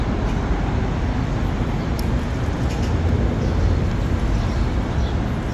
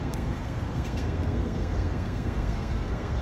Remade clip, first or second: second